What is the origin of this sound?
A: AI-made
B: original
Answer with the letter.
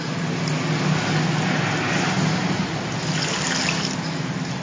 B